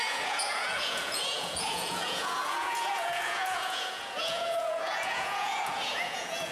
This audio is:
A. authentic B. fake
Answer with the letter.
B